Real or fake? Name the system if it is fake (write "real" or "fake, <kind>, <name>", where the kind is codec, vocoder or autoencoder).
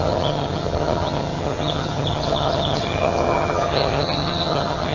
fake, vocoder, HiFi-GAN